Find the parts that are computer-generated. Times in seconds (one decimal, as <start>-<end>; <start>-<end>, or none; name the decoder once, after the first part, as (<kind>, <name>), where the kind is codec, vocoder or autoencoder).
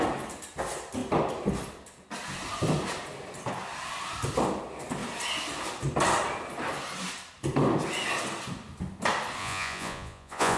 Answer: 9.4-10.6 (vocoder, Vocos)